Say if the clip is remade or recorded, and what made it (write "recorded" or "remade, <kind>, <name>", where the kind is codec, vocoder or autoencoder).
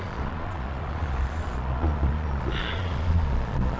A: remade, vocoder, Vocos